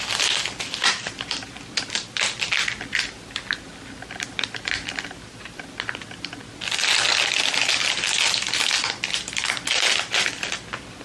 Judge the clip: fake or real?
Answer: real